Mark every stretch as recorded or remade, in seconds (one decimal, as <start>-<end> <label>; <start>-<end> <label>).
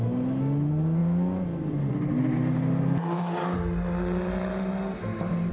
0.0-5.5 recorded